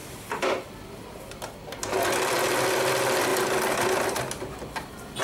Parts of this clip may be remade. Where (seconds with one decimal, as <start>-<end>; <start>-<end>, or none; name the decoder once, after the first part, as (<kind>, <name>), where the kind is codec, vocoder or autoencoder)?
none